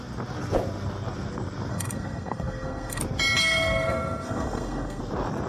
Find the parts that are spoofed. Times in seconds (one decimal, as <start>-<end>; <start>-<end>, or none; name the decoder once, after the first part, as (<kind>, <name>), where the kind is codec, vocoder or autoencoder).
1.7-3.0 (codec, SNAC); 3.4-5.0